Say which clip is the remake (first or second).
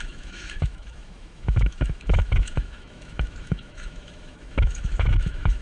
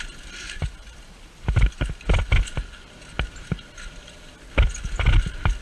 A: first